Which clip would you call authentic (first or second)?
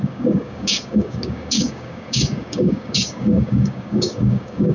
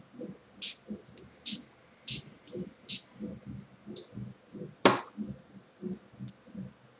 second